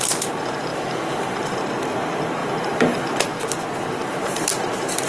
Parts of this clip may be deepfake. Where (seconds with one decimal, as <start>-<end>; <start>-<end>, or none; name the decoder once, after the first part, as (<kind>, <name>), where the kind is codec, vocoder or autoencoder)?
0.7-1.6 (vocoder, BigVGAN v2); 2.4-3.1; 4.0-4.5